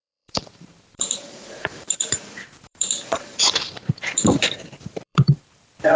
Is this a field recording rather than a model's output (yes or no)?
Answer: no